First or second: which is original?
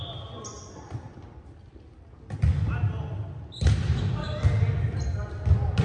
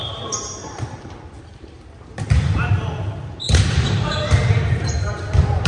first